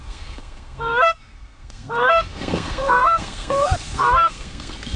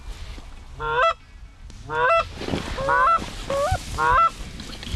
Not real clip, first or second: first